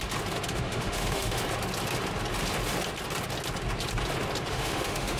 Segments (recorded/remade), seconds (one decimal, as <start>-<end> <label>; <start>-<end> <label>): 0.0-0.5 recorded; 0.5-1.4 remade; 1.4-4.5 recorded; 4.5-5.2 remade